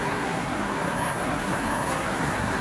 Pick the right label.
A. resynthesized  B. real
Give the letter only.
A